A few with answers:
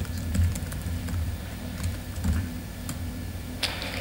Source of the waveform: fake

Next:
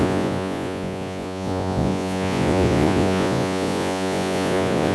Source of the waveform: fake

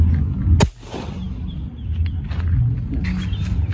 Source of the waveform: real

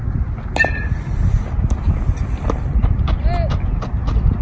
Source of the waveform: real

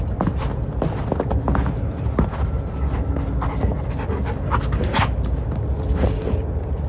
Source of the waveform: real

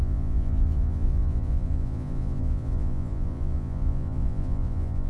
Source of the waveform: fake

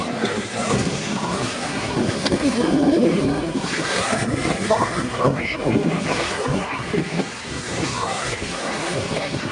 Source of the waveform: fake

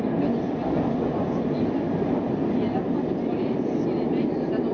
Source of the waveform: real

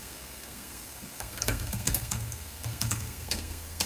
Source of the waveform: fake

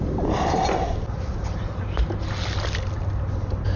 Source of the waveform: real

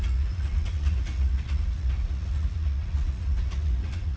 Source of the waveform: fake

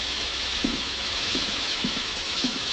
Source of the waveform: fake